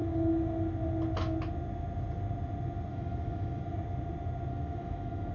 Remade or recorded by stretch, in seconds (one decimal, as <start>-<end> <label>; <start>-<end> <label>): 0.0-2.9 recorded; 2.9-3.6 remade; 3.6-4.5 recorded; 4.5-5.3 remade